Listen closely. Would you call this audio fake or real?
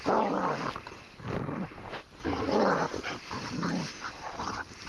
fake